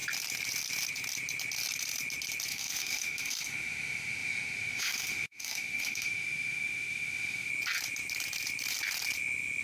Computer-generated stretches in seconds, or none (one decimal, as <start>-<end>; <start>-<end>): 2.5-7.5